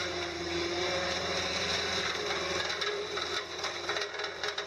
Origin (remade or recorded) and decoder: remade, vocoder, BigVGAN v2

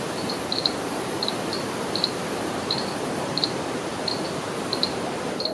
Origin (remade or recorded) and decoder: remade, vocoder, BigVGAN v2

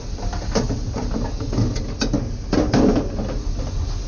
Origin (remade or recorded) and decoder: recorded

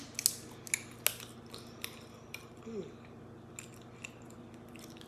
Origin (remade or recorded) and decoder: recorded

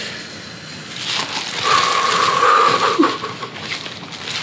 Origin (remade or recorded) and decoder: recorded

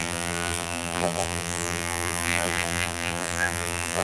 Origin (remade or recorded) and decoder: remade, vocoder, BigVGAN v2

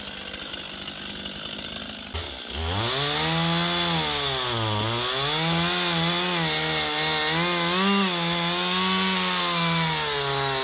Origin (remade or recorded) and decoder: recorded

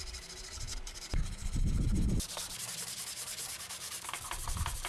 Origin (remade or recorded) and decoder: remade, vocoder, BigVGAN v2